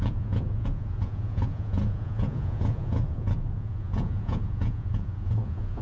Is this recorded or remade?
remade